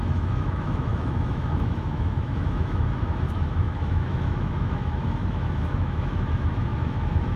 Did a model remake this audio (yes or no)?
yes